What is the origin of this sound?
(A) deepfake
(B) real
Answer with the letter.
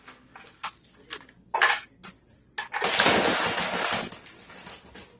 B